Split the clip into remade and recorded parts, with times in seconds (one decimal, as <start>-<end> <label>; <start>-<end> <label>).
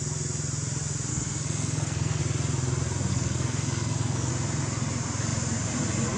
0.0-1.1 recorded; 1.1-2.2 remade; 2.2-3.1 recorded; 3.1-4.3 remade; 4.3-6.2 recorded